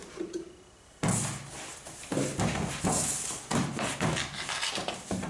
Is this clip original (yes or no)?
yes